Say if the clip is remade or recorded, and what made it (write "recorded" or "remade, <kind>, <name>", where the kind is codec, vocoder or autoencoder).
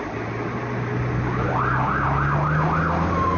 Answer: recorded